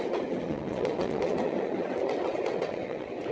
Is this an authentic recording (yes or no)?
no